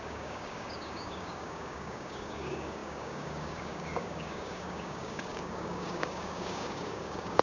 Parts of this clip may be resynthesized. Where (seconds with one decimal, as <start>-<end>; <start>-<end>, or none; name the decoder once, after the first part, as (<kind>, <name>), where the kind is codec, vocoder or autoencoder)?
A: 0.0-7.4 (codec, DAC)